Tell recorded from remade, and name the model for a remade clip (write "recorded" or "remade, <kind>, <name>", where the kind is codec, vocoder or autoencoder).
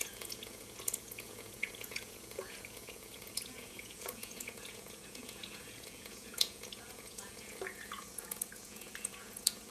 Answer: remade, vocoder, Vocos